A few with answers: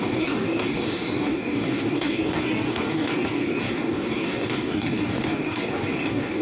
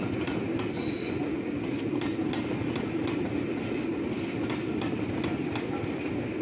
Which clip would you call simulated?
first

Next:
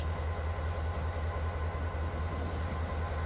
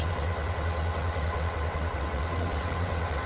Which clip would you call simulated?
second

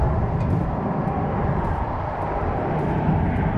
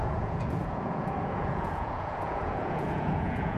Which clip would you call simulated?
second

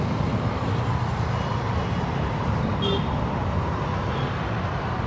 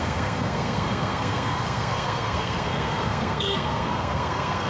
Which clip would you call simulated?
second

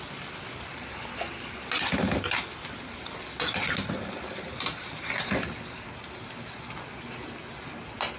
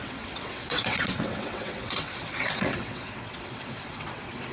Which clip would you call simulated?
second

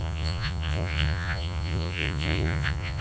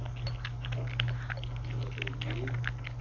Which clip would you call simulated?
first